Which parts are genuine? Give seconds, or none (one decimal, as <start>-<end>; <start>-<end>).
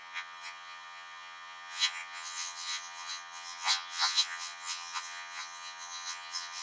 none